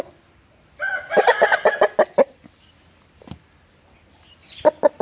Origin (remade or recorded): recorded